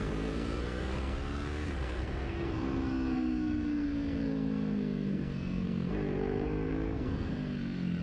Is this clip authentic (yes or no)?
no